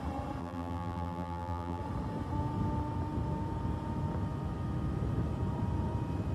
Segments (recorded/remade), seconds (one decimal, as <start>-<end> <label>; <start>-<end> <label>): 0.0-0.4 recorded; 0.4-1.8 remade; 1.8-6.3 recorded